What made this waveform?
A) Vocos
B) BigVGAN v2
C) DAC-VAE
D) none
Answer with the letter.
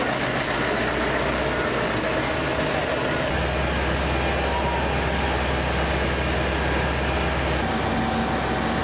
D